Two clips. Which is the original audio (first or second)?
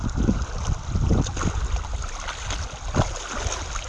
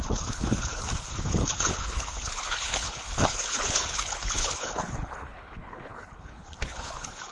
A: first